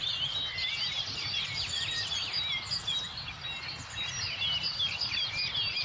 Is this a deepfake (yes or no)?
no